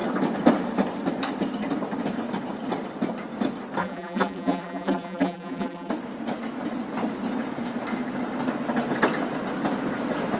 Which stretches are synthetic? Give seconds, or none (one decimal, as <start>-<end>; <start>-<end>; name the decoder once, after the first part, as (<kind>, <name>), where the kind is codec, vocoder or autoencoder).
3.8-5.9 (vocoder, BigVGAN v2)